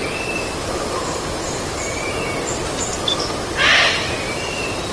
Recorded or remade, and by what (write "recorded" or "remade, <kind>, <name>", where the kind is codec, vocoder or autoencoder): recorded